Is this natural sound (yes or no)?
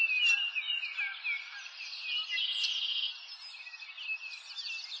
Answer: yes